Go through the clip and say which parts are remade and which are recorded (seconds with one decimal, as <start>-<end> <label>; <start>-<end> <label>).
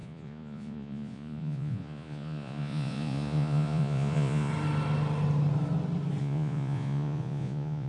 0.0-4.5 remade; 4.5-6.2 recorded; 6.2-7.9 remade